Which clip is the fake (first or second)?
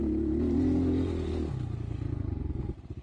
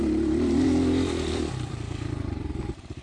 second